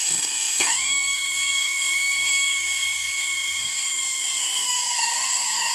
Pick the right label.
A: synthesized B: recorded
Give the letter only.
A